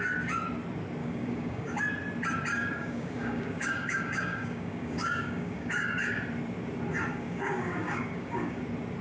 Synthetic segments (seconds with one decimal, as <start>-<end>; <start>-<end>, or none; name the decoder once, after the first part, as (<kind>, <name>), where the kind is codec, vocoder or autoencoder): 1.0-1.8 (codec, DAC); 2.5-6.2; 7.1-8.6